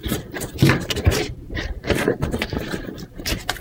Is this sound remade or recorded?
remade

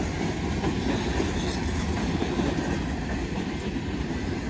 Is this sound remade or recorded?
recorded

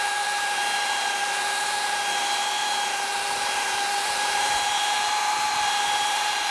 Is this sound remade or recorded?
remade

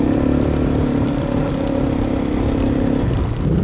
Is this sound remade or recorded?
remade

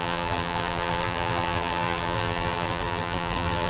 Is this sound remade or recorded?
remade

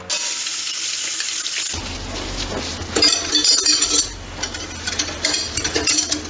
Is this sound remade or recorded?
recorded